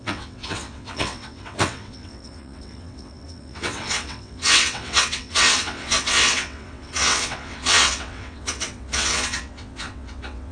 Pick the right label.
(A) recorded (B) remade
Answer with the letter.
B